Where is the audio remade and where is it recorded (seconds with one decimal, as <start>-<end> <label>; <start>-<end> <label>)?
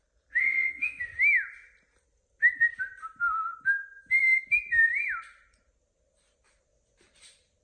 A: 0.0-0.4 recorded; 0.4-1.0 remade; 1.0-7.6 recorded